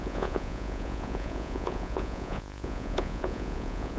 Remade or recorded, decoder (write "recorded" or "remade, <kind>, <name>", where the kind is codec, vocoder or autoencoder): remade, vocoder, Vocos